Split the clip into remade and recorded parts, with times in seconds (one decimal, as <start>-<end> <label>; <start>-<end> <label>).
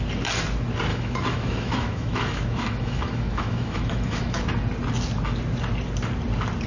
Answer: 0.0-0.9 recorded; 0.9-4.4 remade; 4.4-6.7 recorded